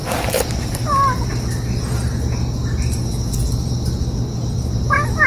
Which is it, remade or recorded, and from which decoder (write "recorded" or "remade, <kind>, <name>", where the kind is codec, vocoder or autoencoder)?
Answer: recorded